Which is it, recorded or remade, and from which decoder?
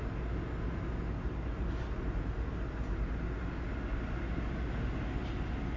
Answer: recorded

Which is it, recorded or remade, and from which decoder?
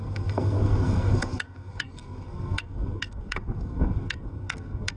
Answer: remade, codec, SNAC